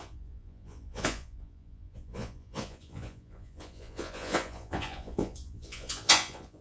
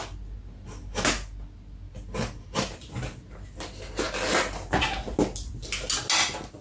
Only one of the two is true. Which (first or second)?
second